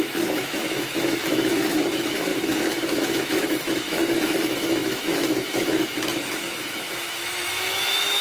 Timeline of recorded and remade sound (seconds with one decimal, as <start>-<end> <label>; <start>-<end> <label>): 0.0-8.2 remade